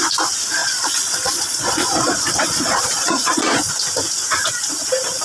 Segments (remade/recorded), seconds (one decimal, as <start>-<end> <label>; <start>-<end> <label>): 0.0-0.6 recorded; 0.6-3.7 remade; 3.7-5.2 recorded